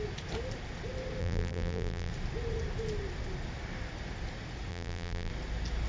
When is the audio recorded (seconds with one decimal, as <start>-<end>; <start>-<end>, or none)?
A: 0.0-1.2; 2.1-4.7; 5.3-5.9